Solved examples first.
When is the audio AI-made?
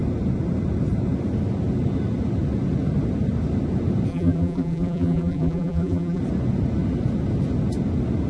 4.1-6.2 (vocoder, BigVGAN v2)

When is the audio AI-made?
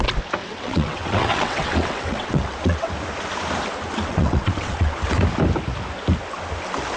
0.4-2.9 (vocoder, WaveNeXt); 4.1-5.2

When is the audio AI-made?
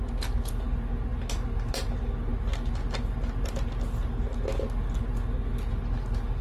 none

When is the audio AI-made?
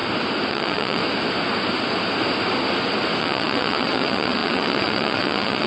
0.5-1.0 (vocoder, WaveNeXt); 3.2-5.7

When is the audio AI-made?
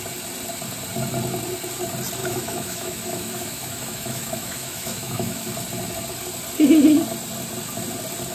2.2-5.5 (autoencoder, DAC-VAE)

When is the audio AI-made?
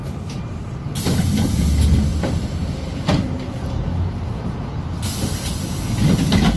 0.0-0.7 (vocoder, BigVGAN v2); 2.1-4.9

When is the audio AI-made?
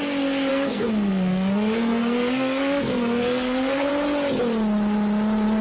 0.5-3.9 (codec, SNAC)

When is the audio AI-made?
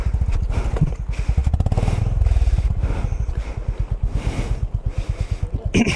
none